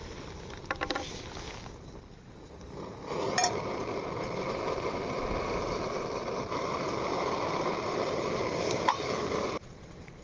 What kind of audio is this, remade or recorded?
remade